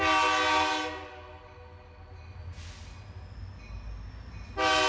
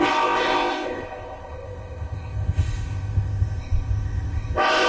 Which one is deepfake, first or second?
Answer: second